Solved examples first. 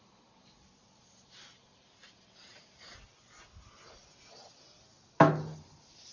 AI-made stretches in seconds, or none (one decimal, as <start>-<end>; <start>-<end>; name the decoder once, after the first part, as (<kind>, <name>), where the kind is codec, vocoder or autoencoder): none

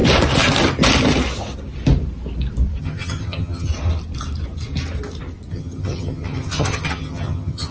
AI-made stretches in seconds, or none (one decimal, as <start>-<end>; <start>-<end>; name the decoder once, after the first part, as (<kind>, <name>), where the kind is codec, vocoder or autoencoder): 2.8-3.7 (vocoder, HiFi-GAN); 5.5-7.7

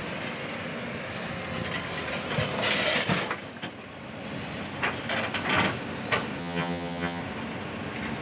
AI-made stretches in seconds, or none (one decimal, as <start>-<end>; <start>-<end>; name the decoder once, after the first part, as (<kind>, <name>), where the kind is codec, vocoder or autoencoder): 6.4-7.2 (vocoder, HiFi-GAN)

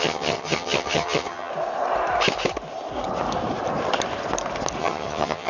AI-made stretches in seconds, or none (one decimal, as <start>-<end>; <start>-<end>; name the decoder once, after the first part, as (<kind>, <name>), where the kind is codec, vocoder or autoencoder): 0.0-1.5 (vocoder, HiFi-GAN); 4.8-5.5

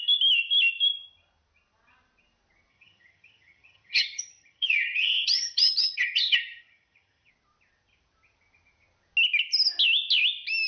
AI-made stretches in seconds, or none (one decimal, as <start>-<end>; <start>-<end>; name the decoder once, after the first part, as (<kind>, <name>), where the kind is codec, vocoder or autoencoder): 2.7-7.3 (vocoder, HiFi-GAN)

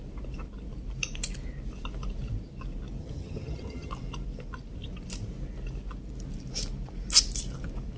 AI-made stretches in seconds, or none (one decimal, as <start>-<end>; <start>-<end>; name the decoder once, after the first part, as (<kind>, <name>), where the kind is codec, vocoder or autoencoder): 3.0-3.9 (vocoder, HiFi-GAN)